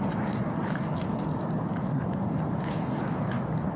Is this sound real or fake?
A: fake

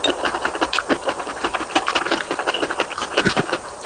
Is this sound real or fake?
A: fake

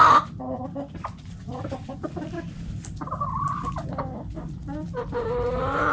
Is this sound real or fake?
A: fake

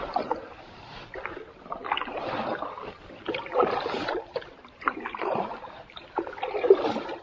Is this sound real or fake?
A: fake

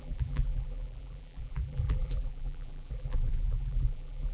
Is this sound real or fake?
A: fake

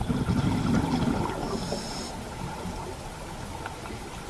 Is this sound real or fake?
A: fake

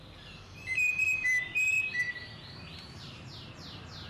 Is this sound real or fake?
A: fake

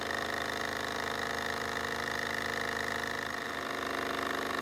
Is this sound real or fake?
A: real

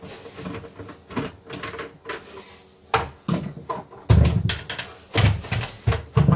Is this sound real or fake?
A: real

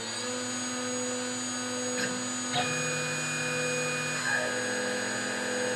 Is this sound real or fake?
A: real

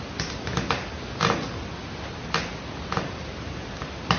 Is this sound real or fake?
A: real